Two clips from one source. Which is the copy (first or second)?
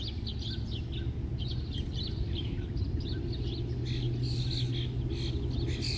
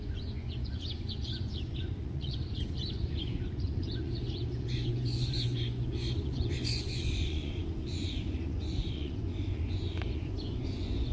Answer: second